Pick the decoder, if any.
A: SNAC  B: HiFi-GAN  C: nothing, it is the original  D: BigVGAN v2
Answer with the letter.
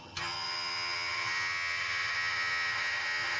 B